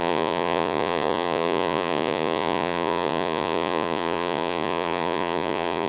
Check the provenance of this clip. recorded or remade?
remade